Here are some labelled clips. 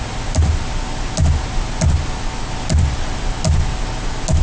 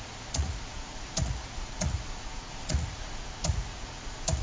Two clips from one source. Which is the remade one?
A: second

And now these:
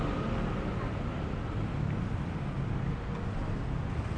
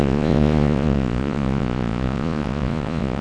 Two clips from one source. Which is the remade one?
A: second